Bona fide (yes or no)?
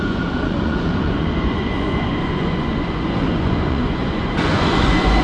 no